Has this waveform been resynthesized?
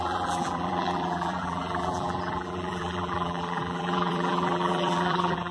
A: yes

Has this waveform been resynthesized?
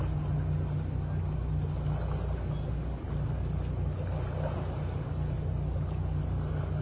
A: no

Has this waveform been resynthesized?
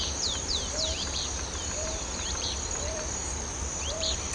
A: yes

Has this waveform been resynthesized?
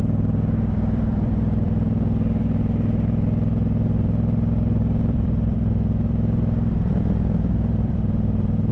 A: yes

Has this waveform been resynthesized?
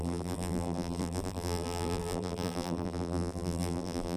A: yes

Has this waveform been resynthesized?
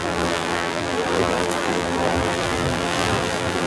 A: yes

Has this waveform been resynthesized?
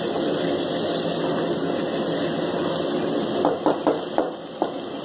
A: no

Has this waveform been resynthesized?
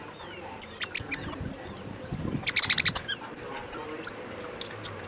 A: no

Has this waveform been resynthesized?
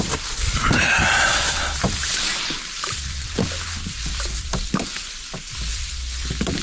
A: yes